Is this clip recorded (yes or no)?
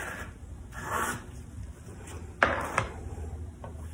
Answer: yes